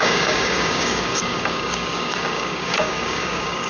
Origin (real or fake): fake